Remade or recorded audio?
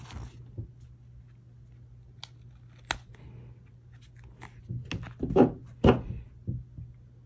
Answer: recorded